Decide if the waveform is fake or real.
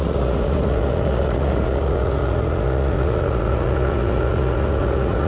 fake